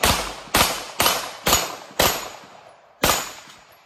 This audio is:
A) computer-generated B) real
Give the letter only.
B